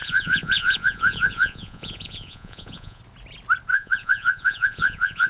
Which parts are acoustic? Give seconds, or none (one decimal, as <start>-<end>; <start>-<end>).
3.0-3.7